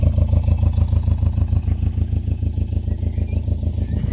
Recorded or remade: recorded